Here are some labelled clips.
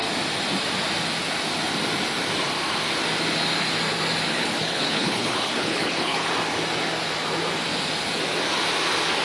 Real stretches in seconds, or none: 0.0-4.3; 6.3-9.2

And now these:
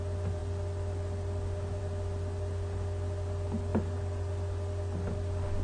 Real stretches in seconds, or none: 0.0-5.6